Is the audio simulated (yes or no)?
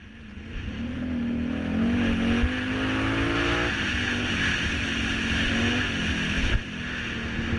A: no